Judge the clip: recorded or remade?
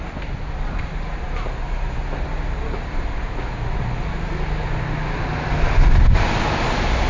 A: recorded